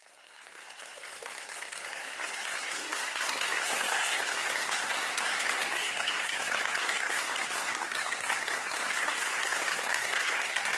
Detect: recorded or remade remade